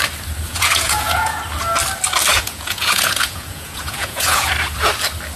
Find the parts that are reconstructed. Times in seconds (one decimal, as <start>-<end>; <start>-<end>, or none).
0.5-1.4; 2.3-4.5